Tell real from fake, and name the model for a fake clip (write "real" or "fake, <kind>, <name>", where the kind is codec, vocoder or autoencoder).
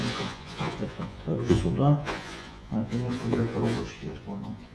fake, vocoder, Vocos